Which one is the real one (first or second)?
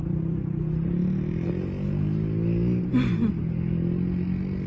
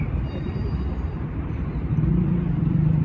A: first